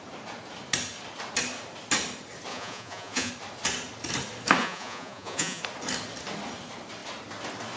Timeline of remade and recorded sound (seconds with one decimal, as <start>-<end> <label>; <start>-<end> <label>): 0.0-2.5 recorded; 2.5-3.3 remade; 3.3-4.6 recorded; 4.6-5.6 remade; 5.6-7.8 recorded